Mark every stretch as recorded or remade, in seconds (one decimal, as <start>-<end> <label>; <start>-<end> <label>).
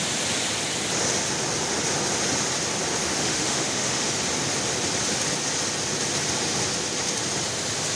0.0-3.0 recorded; 3.0-4.1 remade; 4.1-8.0 recorded